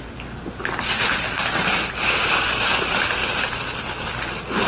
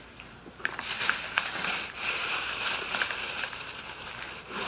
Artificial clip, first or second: second